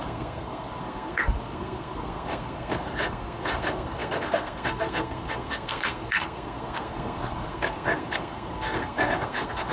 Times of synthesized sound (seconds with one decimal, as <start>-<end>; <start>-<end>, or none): 0.0-9.7